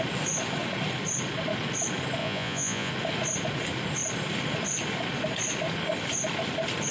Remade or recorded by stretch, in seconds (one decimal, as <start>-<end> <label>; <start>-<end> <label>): 0.0-2.2 recorded; 2.2-2.9 remade; 2.9-6.9 recorded